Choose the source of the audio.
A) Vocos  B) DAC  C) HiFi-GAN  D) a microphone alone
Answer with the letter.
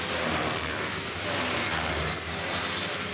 D